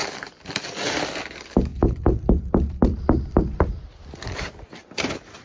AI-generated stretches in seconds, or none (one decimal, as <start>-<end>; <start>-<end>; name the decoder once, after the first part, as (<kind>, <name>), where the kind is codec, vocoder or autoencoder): 1.7-4.9 (vocoder, BigVGAN v2)